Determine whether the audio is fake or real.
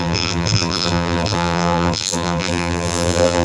fake